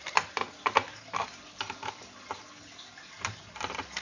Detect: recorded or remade recorded